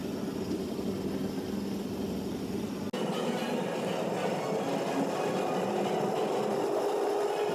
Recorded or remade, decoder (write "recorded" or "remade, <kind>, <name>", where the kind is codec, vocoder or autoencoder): recorded